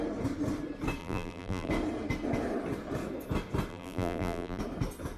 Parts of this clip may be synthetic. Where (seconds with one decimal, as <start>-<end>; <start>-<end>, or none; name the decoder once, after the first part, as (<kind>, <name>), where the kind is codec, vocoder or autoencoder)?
1.0-1.7 (vocoder, BigVGAN v2); 3.7-4.6